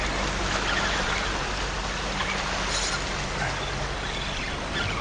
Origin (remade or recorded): recorded